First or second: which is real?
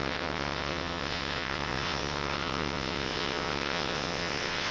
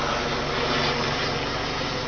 second